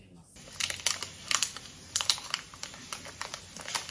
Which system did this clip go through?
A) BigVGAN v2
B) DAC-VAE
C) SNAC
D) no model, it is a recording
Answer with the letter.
D